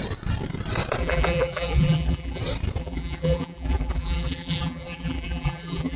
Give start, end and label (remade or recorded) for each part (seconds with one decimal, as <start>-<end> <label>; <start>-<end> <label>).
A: 0.0-1.0 recorded; 1.0-2.4 remade; 2.4-2.8 recorded; 2.8-6.0 remade